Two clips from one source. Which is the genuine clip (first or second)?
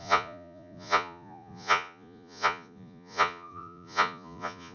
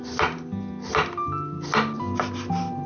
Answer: second